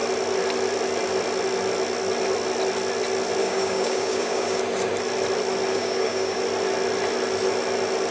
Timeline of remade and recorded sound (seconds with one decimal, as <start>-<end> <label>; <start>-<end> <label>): 0.0-3.4 recorded; 3.4-4.6 remade; 4.6-5.7 recorded; 5.7-6.4 remade; 6.4-8.1 recorded

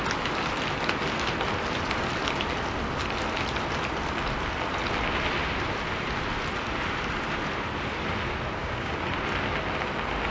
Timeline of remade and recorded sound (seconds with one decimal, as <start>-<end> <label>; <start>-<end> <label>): 0.0-8.6 recorded; 8.6-9.1 remade; 9.1-10.3 recorded

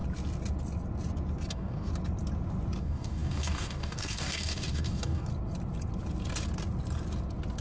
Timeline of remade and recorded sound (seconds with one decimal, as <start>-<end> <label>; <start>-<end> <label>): 0.0-1.5 recorded; 1.5-1.9 remade; 1.9-2.8 recorded; 2.8-5.3 remade; 5.3-7.6 recorded

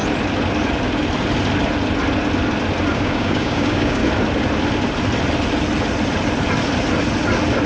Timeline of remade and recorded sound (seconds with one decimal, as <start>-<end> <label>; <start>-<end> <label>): 0.0-2.9 recorded; 2.9-4.0 remade; 4.0-7.7 recorded